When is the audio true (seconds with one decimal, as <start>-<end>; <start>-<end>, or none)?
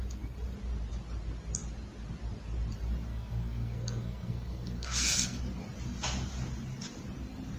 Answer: 0.0-3.1; 5.4-7.6